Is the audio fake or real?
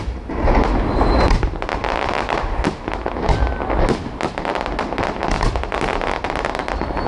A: real